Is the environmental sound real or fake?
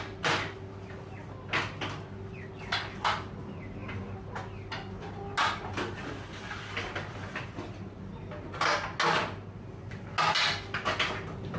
real